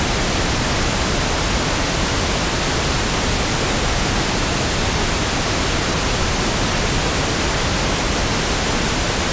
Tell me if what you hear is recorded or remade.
recorded